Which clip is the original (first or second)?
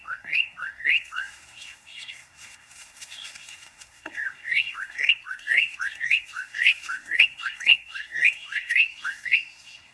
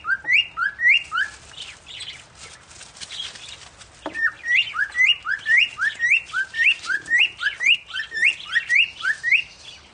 second